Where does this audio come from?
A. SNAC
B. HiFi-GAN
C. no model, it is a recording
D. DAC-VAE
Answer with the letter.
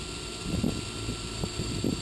C